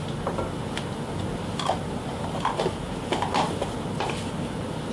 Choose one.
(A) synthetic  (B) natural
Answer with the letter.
B